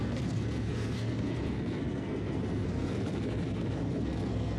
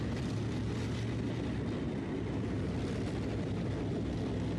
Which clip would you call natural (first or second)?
second